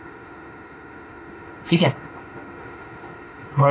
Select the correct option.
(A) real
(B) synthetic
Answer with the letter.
B